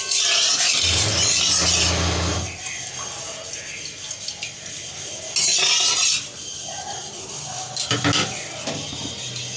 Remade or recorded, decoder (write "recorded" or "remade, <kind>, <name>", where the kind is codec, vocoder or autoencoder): recorded